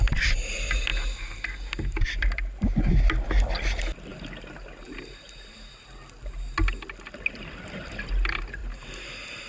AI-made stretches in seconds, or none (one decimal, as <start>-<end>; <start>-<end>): none